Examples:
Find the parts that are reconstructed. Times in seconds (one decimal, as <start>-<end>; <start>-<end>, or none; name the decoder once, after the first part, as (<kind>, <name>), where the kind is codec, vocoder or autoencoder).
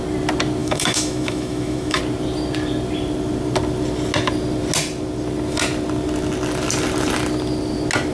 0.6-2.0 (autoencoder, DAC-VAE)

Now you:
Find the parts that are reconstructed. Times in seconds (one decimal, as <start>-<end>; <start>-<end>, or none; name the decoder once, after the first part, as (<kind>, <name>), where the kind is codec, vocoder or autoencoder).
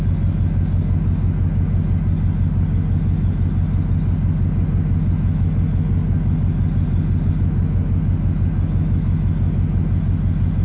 none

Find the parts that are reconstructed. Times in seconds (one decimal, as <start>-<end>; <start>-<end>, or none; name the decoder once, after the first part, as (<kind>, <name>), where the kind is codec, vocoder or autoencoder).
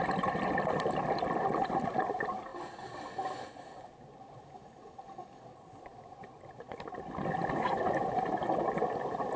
none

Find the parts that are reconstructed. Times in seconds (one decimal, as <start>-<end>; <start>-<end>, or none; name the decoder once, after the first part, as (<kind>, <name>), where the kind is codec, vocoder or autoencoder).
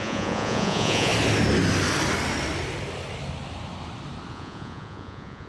0.0-1.1 (vocoder, Vocos); 4.3-5.5